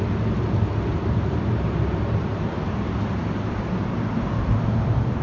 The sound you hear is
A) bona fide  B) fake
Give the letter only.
B